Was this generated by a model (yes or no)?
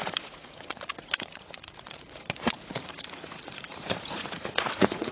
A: yes